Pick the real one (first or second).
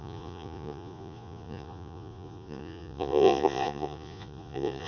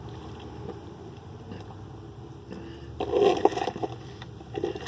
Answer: second